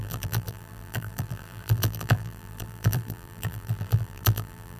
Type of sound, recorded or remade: remade